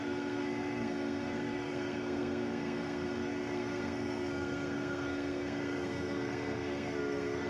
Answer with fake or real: fake